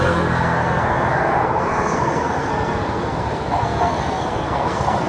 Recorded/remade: remade